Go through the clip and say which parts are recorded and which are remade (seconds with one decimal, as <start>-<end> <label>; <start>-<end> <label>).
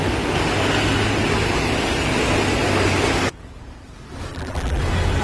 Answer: 0.0-4.3 recorded; 4.3-4.8 remade; 4.8-5.2 recorded